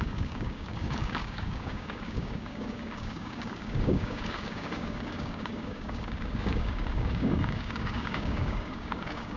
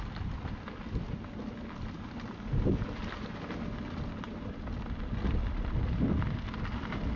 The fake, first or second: first